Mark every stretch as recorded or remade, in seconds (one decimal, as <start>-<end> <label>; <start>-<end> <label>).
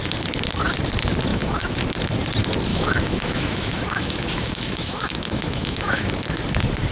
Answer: 0.0-1.3 recorded; 1.3-1.8 remade; 1.8-2.7 recorded; 2.7-6.1 remade; 6.1-6.9 recorded